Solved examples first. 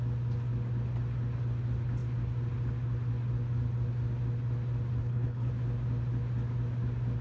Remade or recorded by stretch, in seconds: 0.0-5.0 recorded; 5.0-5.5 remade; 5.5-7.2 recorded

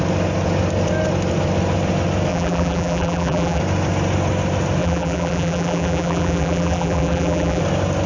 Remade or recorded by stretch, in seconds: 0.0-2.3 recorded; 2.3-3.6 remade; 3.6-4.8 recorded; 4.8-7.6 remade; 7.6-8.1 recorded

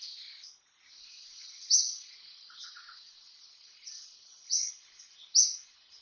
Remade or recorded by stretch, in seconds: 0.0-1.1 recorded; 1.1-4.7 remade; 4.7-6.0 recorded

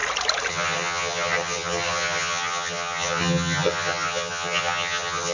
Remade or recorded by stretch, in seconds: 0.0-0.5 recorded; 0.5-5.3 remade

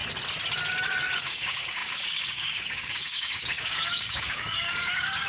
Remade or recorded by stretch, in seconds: 0.0-1.2 recorded; 1.2-5.3 remade

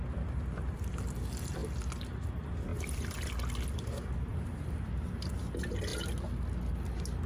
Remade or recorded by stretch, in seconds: 0.0-7.3 recorded

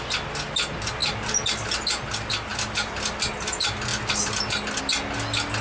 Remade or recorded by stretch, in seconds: 0.0-5.6 recorded

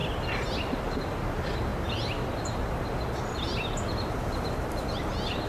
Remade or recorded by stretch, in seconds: 0.0-5.5 recorded